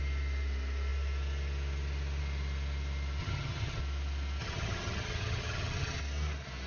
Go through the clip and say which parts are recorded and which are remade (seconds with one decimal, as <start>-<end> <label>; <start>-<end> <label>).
0.0-3.2 recorded; 3.2-3.8 remade; 3.8-4.4 recorded; 4.4-6.0 remade; 6.0-6.7 recorded